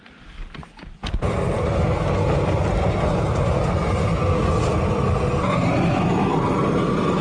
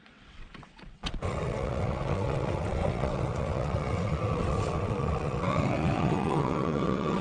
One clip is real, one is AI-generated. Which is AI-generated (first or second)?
second